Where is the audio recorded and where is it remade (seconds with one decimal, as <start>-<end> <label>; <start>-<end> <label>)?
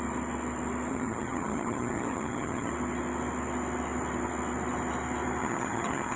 0.0-0.9 recorded; 0.9-2.7 remade; 2.7-5.4 recorded; 5.4-6.2 remade